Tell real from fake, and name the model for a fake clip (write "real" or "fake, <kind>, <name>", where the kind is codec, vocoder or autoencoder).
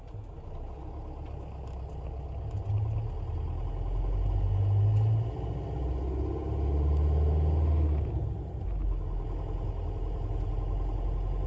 real